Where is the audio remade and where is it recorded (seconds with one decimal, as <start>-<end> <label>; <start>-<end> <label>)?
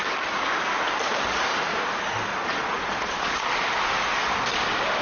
0.0-2.3 recorded; 2.3-3.4 remade; 3.4-5.0 recorded